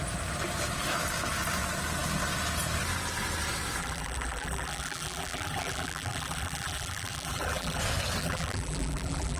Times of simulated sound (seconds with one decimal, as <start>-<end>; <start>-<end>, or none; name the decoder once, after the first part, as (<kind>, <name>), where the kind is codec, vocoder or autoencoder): 3.8-7.8 (vocoder, BigVGAN v2); 8.2-9.4